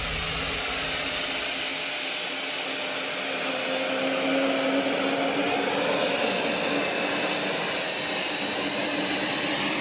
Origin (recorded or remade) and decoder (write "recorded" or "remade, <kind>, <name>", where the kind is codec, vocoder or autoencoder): recorded